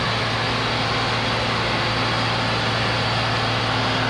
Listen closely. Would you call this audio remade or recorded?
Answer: recorded